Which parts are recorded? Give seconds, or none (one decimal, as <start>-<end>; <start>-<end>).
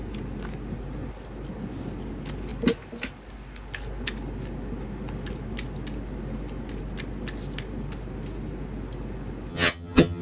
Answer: 0.0-9.5